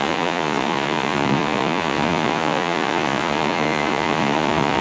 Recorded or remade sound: remade